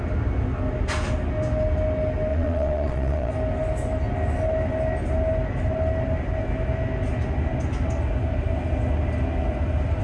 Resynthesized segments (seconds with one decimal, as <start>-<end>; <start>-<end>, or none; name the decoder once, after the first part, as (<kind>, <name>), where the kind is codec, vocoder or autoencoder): 2.3-3.3 (vocoder, Vocos)